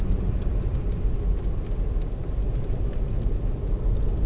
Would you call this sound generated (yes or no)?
no